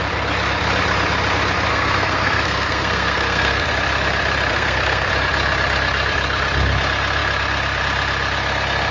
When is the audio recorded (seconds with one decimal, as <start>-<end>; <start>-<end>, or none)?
0.0-1.7; 3.7-4.5; 5.1-8.9